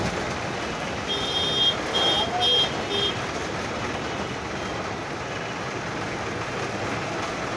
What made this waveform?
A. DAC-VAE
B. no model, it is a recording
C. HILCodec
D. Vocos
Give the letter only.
B